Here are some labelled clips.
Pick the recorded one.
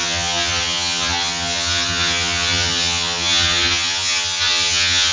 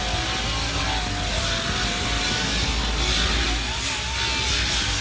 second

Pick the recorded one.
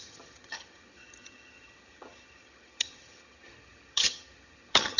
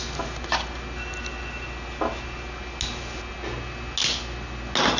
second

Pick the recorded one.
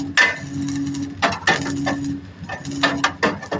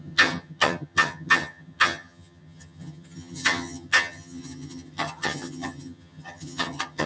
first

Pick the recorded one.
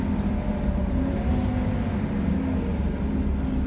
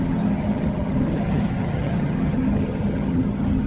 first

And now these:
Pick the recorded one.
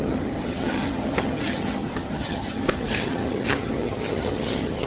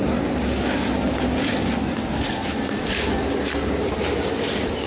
second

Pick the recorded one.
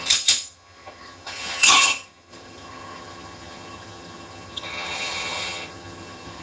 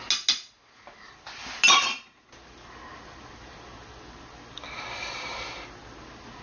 second